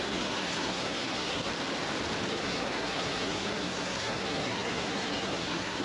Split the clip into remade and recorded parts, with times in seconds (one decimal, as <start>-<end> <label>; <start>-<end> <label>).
0.0-1.5 remade; 1.5-2.3 recorded; 2.3-5.8 remade